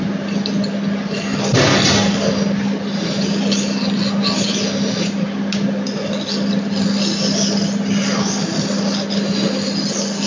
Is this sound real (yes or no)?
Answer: yes